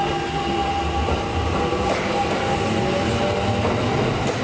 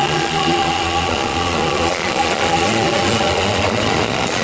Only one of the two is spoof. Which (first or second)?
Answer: second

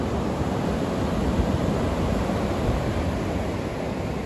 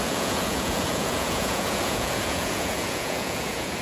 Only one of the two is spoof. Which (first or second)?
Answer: second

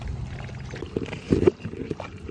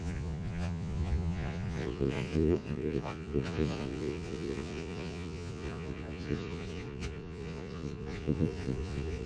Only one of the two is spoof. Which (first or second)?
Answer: second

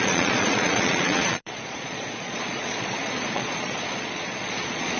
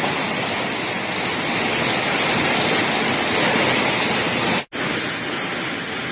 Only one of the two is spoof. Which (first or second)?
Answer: first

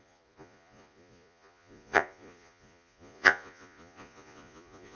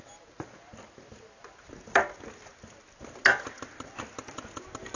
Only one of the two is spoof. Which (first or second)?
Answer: first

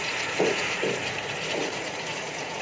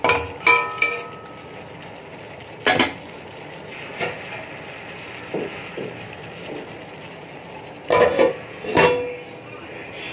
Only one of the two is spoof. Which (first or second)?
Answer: first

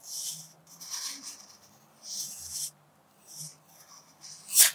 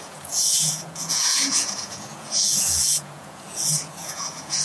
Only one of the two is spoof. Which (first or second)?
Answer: second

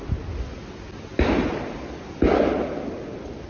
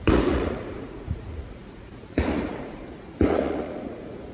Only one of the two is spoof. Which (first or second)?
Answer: second